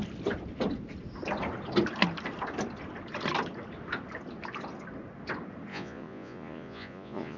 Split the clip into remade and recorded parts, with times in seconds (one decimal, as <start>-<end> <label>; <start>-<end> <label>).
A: 0.0-5.7 recorded; 5.7-7.4 remade